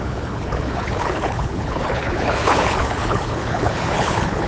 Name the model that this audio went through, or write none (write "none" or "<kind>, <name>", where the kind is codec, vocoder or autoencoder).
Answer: codec, HILCodec